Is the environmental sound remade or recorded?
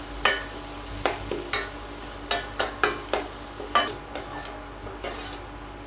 recorded